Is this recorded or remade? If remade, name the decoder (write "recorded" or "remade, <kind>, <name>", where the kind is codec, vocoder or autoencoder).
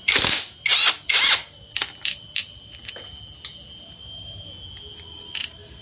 recorded